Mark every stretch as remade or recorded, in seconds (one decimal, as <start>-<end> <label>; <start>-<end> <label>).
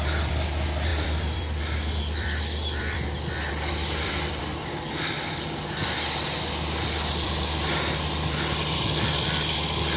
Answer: 0.0-10.0 remade